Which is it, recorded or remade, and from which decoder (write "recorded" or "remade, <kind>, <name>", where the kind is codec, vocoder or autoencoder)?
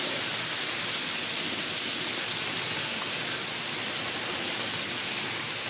recorded